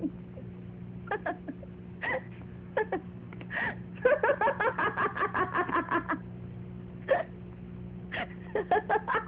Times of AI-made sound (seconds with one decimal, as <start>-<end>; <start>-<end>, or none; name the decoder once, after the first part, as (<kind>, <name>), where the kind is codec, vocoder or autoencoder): none